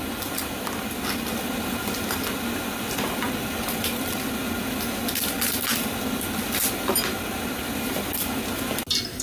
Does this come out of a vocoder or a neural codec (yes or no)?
no